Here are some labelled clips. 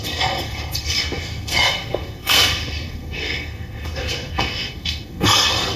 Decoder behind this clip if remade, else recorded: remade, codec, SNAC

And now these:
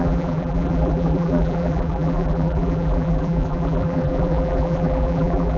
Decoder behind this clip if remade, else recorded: remade, vocoder, BigVGAN v2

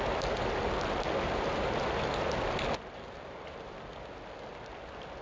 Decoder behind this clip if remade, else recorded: recorded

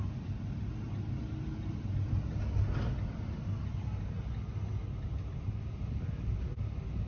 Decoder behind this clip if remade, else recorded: recorded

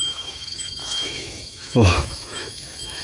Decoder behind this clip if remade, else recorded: remade, autoencoder, DAC-VAE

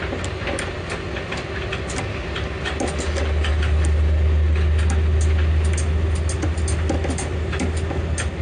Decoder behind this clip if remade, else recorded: recorded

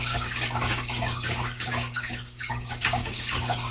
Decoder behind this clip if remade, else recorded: remade, codec, DAC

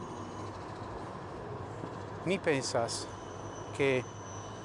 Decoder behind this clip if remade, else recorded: recorded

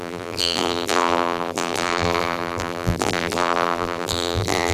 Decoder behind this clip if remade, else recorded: remade, vocoder, BigVGAN v2